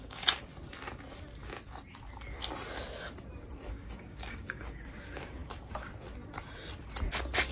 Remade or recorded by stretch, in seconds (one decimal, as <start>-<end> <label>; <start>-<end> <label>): 0.0-0.5 remade; 0.5-3.7 recorded; 3.7-5.4 remade; 5.4-7.5 recorded